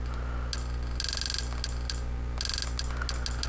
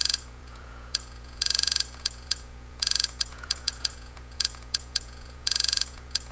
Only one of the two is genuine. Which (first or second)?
first